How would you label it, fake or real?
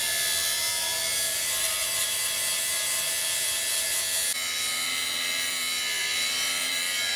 fake